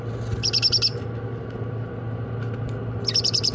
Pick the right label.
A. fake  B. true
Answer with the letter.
B